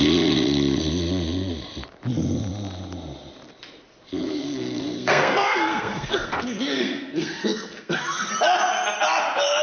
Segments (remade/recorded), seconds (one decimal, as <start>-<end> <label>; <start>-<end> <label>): 0.0-4.2 recorded; 4.2-8.3 remade; 8.3-9.6 recorded